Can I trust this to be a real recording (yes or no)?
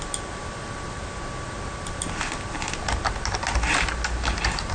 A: yes